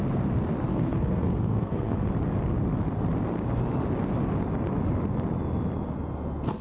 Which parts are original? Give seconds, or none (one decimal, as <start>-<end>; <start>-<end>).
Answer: 0.0-0.7; 2.1-6.6